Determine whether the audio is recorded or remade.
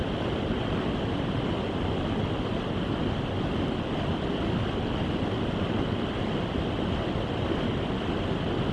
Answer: recorded